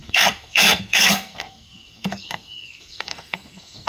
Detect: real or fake fake